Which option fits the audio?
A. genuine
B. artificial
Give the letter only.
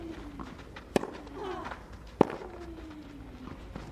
A